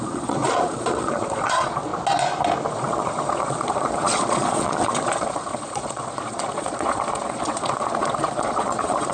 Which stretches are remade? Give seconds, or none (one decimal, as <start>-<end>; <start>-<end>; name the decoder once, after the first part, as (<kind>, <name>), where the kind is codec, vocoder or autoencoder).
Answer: 0.0-1.9 (vocoder, Vocos); 2.7-9.1

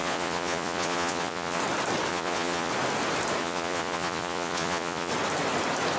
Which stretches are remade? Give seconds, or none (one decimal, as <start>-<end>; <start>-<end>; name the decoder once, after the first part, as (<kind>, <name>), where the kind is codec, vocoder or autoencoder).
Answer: 0.0-1.6 (vocoder, Vocos); 2.1-2.7; 3.4-5.1

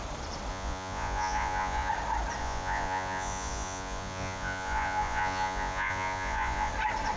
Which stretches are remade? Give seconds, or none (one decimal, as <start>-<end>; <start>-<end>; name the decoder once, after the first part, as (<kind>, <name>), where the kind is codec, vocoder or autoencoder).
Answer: 0.5-1.9 (vocoder, Vocos); 2.4-6.7

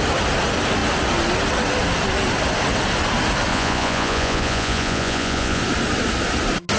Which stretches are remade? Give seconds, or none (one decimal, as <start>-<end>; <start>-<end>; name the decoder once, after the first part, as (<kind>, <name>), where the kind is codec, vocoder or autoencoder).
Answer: 3.5-5.6 (vocoder, Vocos)

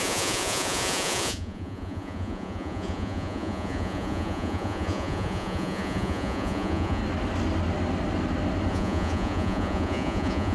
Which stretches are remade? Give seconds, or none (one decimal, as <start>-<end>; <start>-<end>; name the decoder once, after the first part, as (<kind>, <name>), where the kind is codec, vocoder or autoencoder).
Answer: 0.0-7.0 (vocoder, Vocos); 8.7-10.5